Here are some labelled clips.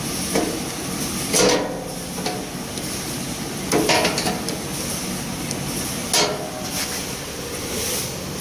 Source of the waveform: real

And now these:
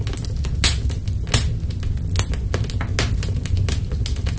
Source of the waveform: real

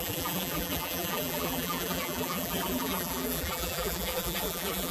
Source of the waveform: fake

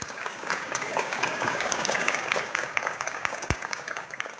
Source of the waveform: fake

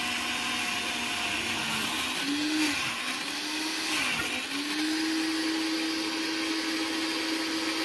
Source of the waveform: real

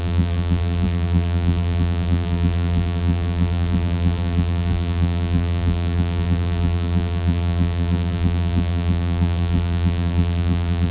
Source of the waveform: fake